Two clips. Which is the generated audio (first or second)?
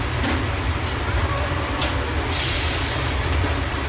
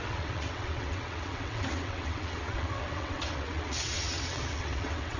second